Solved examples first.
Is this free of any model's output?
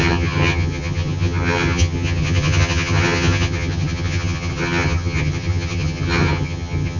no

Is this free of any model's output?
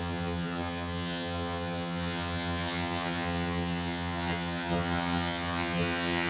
no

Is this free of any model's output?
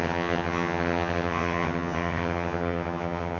no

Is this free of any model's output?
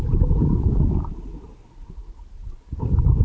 yes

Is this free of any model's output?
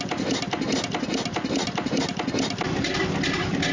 yes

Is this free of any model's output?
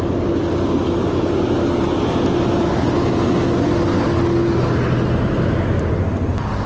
yes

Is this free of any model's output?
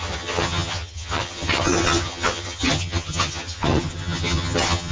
no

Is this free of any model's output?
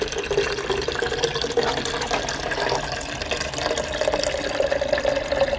yes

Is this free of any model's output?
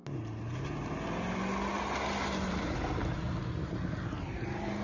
yes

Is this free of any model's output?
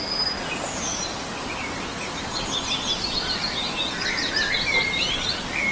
yes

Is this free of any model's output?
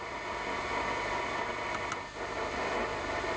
yes